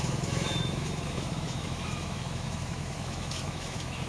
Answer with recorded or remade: remade